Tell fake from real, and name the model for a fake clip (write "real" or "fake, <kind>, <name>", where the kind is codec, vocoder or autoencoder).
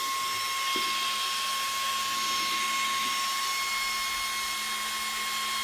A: real